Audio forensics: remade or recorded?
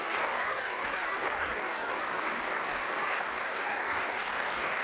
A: remade